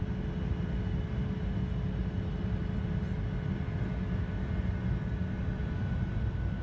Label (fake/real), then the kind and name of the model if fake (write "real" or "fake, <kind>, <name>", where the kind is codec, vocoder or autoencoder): real